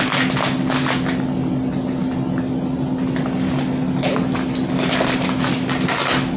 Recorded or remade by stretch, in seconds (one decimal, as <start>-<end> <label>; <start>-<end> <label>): 0.0-6.4 recorded